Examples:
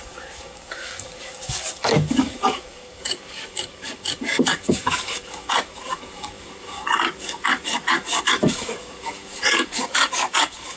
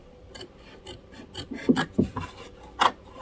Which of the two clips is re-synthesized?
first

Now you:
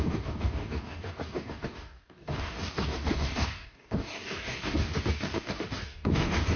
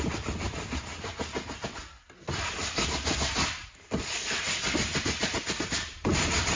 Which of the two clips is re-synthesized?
first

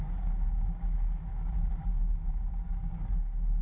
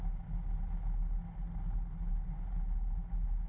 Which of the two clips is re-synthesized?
first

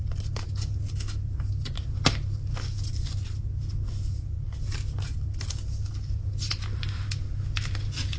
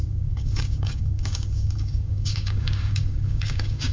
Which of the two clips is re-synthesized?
second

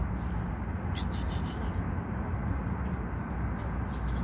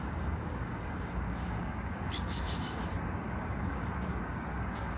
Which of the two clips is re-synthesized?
second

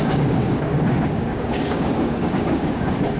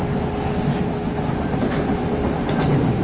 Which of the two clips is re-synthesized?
first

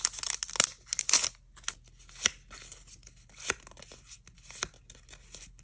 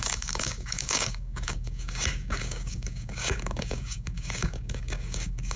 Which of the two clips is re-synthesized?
second